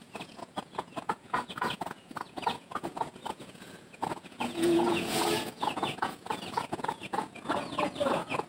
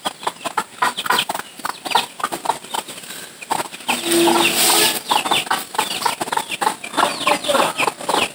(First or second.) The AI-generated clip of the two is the first